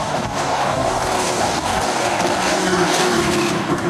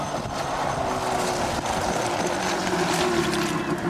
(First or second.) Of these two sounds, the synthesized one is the first